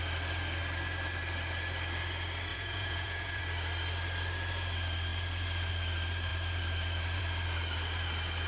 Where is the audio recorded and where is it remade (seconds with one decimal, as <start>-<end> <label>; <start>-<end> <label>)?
0.0-2.5 recorded; 2.5-3.4 remade; 3.4-8.5 recorded